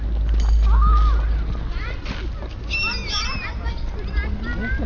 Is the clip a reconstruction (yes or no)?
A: no